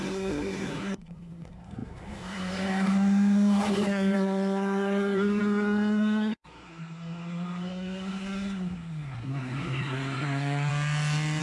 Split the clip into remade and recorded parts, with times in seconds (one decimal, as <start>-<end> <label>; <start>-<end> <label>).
0.0-10.7 remade; 10.7-11.4 recorded